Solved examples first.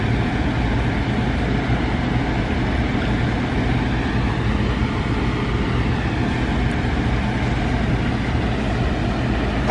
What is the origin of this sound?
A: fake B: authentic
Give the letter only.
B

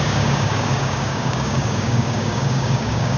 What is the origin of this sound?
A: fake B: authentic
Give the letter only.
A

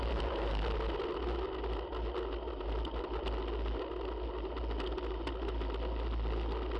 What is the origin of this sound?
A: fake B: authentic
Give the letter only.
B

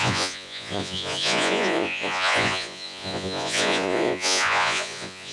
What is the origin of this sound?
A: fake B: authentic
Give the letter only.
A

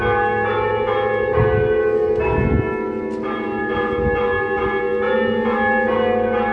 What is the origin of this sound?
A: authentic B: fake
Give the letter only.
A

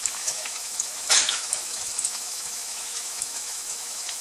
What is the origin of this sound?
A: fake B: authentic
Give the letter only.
A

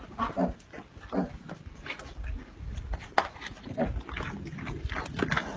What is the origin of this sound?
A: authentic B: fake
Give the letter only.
A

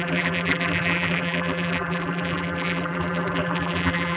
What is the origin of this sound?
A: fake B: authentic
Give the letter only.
A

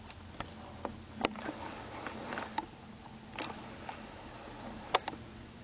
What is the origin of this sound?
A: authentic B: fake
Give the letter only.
A